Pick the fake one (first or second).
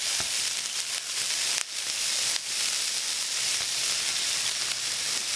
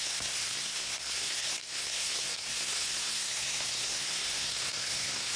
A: second